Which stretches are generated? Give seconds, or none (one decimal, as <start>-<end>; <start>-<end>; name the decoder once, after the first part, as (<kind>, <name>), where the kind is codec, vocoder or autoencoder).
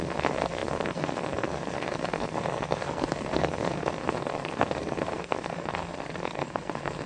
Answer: 0.0-7.1 (codec, SNAC)